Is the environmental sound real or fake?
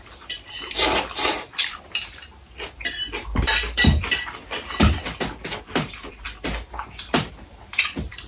fake